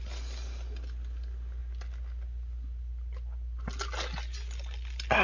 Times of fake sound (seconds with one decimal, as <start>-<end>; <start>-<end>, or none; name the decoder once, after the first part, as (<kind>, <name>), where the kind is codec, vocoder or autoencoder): none